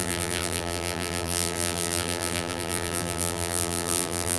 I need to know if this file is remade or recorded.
remade